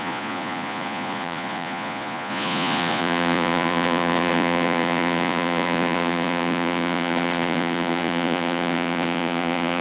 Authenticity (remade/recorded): remade